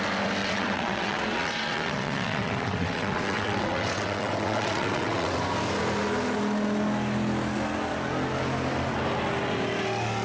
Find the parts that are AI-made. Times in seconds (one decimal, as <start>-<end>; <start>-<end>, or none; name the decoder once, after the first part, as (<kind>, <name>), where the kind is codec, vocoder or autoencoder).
0.4-5.4 (vocoder, WaveNeXt)